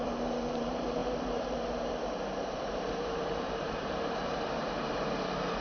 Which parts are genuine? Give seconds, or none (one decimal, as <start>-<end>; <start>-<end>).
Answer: none